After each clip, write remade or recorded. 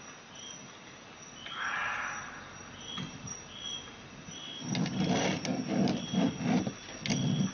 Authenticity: recorded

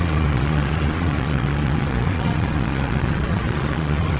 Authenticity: remade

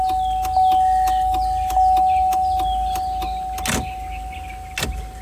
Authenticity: recorded